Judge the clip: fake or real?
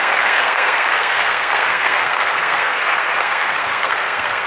fake